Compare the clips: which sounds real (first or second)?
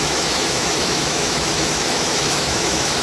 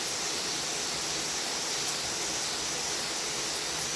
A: second